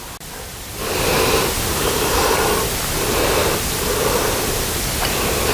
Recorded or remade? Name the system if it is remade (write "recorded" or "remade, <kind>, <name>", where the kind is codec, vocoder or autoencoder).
recorded